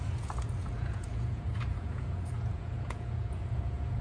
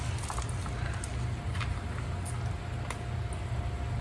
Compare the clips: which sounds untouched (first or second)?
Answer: second